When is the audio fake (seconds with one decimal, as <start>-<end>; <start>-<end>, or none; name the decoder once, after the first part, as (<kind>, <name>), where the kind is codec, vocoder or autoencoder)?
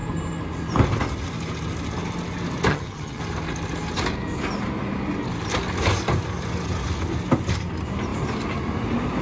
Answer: 2.7-3.2 (vocoder, HiFi-GAN)